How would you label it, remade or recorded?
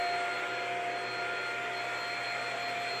recorded